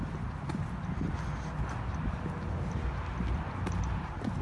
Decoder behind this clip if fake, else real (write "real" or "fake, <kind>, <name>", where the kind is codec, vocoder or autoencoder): real